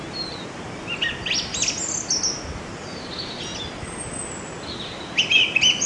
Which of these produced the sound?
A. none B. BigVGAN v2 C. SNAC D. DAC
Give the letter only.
A